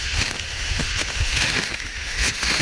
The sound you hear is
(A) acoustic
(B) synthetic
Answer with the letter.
B